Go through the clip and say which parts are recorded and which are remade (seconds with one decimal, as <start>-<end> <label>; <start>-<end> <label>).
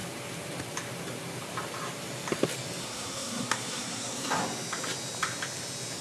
0.0-2.8 recorded; 2.8-4.4 remade; 4.4-6.0 recorded